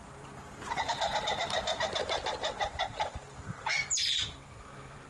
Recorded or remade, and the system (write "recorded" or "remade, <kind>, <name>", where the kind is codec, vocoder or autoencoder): remade, vocoder, BigVGAN v2